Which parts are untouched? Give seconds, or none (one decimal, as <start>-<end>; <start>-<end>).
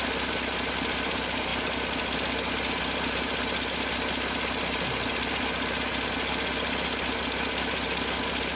0.0-8.6